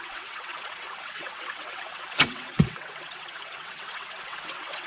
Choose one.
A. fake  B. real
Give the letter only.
A